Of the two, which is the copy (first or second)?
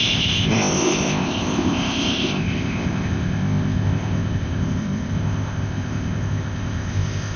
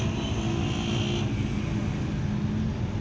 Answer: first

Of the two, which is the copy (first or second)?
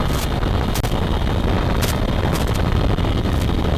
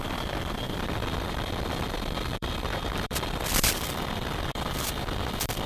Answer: second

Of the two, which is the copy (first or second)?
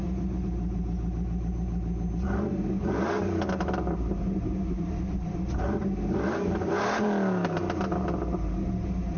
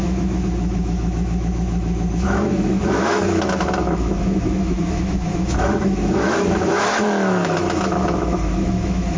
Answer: second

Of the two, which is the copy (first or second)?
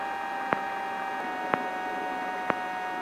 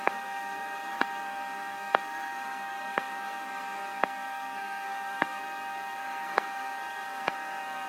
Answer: second